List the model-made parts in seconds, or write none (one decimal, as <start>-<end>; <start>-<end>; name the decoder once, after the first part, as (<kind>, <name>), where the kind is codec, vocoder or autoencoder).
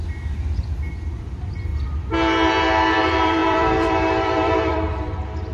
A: 0.0-0.4 (vocoder, BigVGAN v2); 0.9-1.7; 3.0-5.5